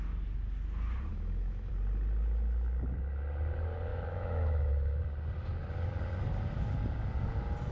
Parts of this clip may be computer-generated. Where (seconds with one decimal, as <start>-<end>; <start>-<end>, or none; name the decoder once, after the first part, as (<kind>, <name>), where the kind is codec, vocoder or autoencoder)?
1.1-1.7 (autoencoder, DAC-VAE); 3.9-5.0